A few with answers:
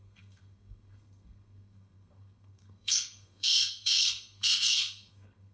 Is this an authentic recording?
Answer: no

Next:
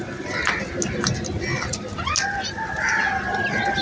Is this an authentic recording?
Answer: yes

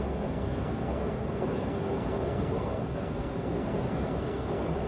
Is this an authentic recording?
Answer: no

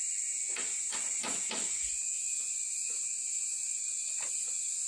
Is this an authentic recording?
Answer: yes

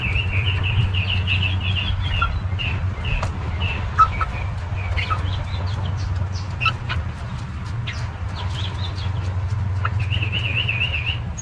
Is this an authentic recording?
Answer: yes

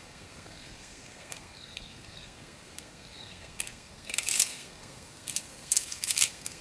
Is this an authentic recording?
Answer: no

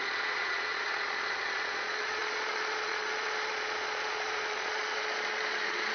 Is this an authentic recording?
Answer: no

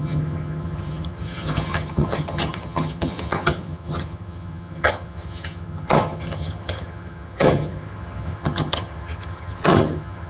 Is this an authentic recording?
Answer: no